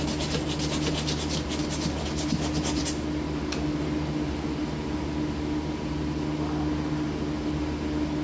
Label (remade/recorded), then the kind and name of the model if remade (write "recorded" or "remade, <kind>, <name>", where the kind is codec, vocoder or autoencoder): recorded